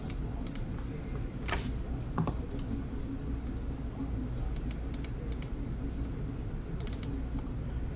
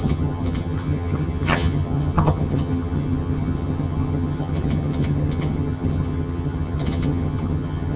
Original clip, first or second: first